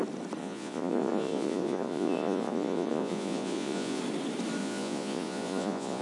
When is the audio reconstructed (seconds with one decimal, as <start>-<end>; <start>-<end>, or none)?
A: 0.4-4.0; 4.6-6.0